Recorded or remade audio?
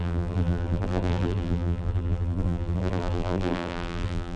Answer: remade